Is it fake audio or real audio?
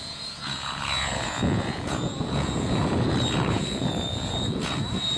fake